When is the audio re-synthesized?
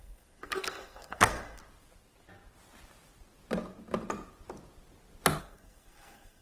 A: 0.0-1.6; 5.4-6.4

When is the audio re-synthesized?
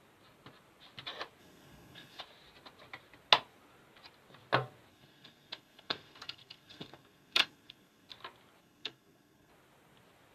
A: 1.4-2.2; 4.9-8.1; 8.6-9.5